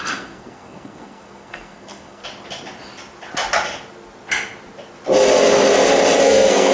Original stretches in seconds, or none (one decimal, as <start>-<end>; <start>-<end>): 2.2-6.2